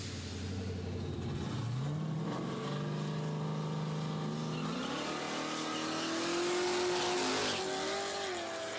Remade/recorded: recorded